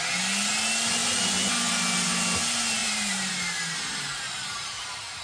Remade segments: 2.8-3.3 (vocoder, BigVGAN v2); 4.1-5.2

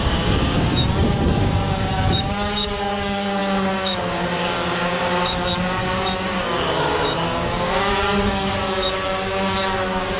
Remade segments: 0.0-10.2 (codec, DAC)

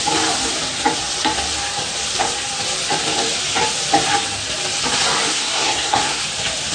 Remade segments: 5.3-6.2 (codec, SNAC)

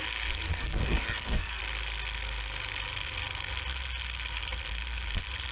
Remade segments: 0.5-1.6 (codec, SNAC)

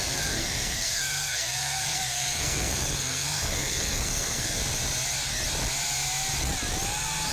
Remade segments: 0.0-4.6 (codec, SNAC)

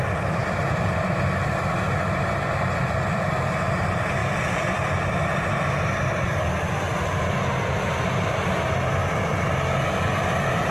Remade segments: 0.0-9.0 (vocoder, BigVGAN v2); 9.9-10.7